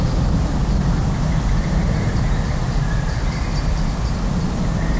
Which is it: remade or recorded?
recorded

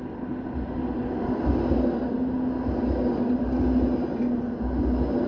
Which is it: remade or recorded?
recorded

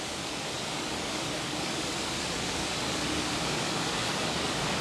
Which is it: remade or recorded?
remade